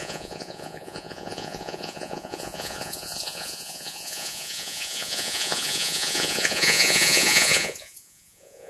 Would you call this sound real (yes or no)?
no